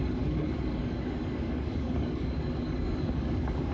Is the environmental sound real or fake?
fake